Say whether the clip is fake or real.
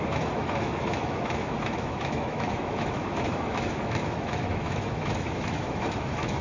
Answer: fake